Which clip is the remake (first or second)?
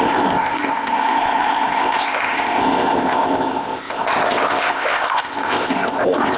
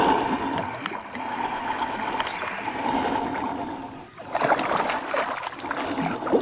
first